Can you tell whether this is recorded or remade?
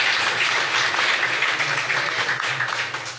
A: recorded